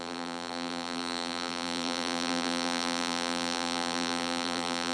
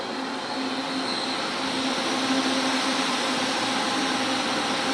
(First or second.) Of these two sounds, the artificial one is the first